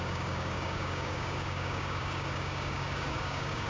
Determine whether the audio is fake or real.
fake